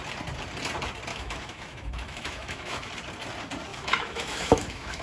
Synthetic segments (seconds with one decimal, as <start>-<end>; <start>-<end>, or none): 1.1-2.9; 3.7-5.0